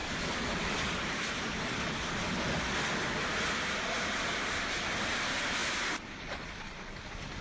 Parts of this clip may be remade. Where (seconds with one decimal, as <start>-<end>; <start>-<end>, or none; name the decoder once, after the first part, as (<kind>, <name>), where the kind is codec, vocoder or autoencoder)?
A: 3.7-5.6 (vocoder, BigVGAN v2); 6.2-7.4